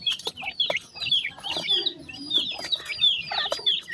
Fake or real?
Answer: real